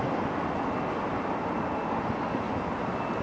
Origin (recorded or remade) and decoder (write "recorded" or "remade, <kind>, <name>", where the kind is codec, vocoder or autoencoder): recorded